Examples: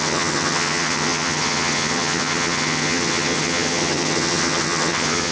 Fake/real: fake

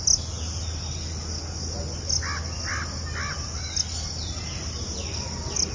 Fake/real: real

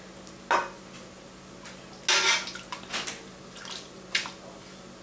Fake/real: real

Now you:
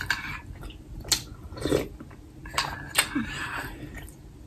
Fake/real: real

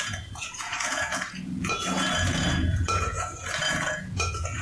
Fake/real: fake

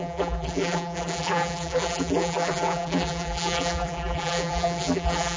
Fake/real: fake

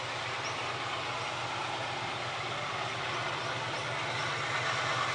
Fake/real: real